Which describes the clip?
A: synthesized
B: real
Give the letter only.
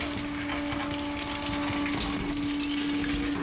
B